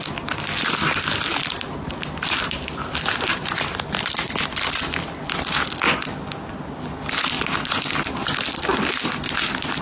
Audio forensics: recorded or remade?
recorded